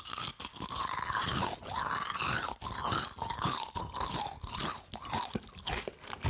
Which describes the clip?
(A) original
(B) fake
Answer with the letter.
A